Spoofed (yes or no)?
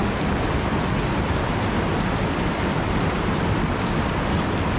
no